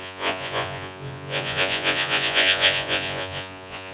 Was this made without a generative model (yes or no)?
no